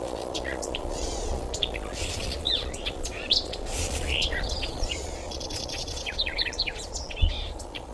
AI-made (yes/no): yes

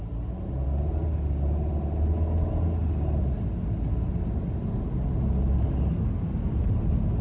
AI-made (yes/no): no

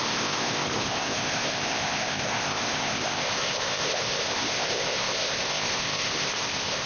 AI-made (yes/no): yes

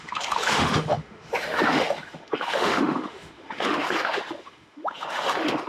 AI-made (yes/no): yes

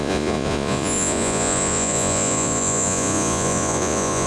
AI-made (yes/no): yes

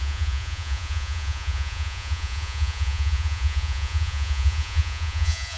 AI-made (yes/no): yes